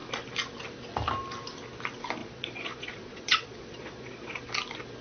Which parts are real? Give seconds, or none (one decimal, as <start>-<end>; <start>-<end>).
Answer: 0.0-2.2; 4.4-5.0